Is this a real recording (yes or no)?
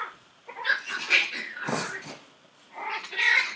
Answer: yes